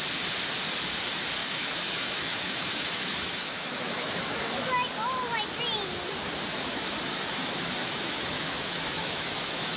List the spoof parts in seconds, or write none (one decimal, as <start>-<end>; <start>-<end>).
1.4-4.6; 6.7-9.8